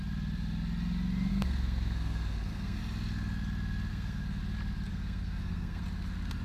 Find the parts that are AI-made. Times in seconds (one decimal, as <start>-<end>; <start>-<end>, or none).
1.3-2.8; 3.9-4.4; 4.9-5.8

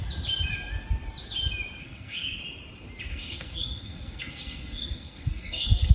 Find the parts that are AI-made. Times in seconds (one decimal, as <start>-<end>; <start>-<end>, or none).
1.8-2.4; 3.1-5.9

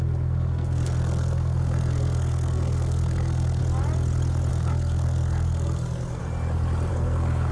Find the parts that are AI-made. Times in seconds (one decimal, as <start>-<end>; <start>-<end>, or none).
0.0-3.6; 4.5-6.2; 6.9-7.5